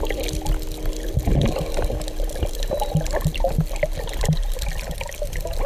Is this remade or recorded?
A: recorded